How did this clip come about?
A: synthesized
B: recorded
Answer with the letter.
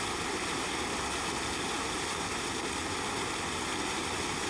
B